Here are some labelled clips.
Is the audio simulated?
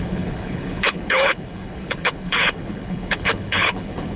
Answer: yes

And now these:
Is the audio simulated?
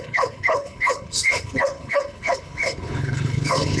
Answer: yes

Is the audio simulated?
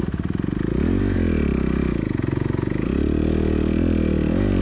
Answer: no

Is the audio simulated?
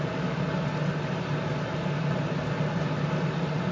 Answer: no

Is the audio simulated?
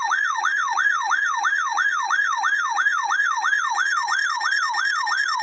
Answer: yes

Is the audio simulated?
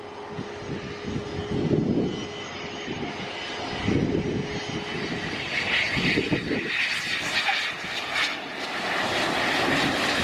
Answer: no